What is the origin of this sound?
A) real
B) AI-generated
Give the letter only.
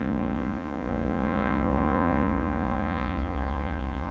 B